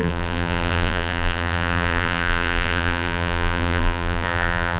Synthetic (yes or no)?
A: yes